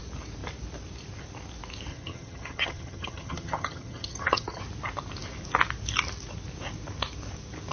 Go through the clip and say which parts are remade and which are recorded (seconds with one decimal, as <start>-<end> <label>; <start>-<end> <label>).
0.0-1.9 recorded; 1.9-4.6 remade; 4.6-7.7 recorded